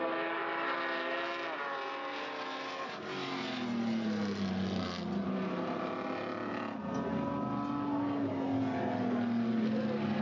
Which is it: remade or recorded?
recorded